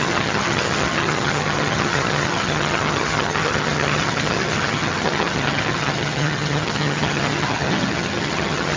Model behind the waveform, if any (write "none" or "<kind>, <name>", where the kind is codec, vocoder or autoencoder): vocoder, HiFi-GAN